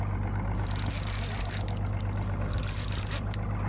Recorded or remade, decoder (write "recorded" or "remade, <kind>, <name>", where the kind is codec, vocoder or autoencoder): recorded